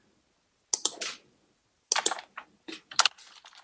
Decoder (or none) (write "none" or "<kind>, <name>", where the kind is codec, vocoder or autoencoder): none